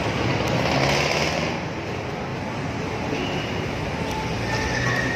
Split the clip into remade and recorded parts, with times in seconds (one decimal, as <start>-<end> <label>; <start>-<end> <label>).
0.0-2.3 recorded; 2.3-3.6 remade; 3.6-5.2 recorded